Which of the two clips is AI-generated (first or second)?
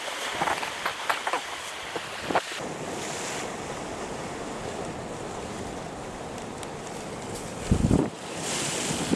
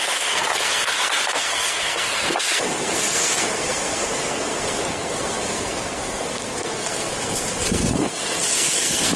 second